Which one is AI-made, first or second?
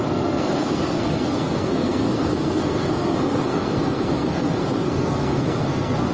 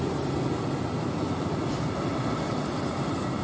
first